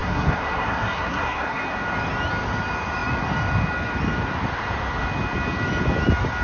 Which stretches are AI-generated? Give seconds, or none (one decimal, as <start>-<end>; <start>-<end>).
0.0-1.6

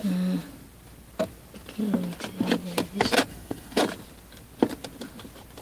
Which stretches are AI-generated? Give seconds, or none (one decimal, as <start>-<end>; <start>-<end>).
3.3-3.8

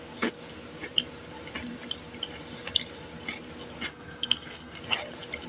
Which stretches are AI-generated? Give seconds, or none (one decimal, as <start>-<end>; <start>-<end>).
3.9-4.8